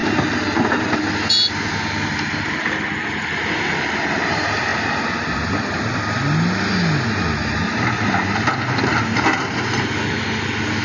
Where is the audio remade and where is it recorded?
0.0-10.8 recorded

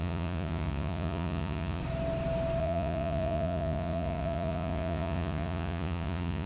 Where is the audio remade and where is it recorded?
0.0-1.8 remade; 1.8-2.6 recorded; 2.6-6.5 remade

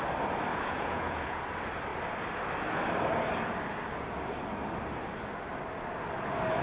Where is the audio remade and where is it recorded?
0.0-0.5 recorded; 0.5-1.4 remade; 1.4-6.6 recorded

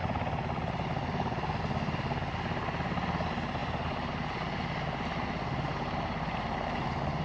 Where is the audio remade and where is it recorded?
0.0-7.2 recorded

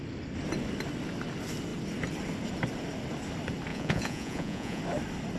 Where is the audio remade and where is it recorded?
0.0-3.7 recorded; 3.7-4.8 remade; 4.8-5.4 recorded

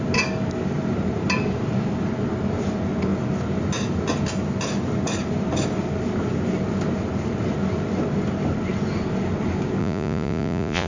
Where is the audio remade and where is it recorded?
0.0-9.8 recorded; 9.8-10.9 remade

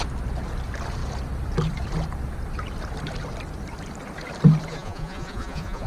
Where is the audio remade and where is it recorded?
0.0-4.7 recorded; 4.7-5.9 remade